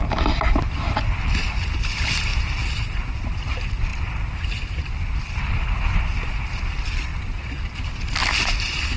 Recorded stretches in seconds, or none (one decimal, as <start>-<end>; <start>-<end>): 2.3-3.2; 7.1-7.6